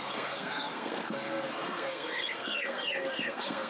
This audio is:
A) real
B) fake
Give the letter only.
B